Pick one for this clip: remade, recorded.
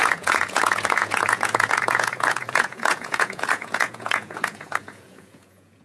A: remade